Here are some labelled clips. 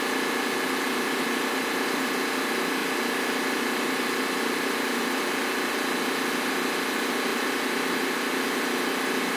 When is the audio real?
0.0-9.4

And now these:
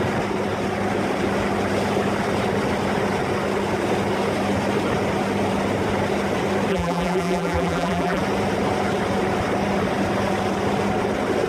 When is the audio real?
0.0-6.7; 8.2-11.5